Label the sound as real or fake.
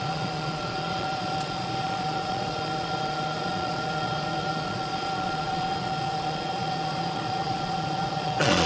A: fake